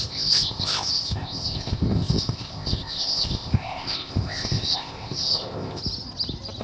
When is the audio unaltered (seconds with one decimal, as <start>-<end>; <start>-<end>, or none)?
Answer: 5.8-6.6